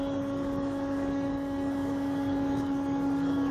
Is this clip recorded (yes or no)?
no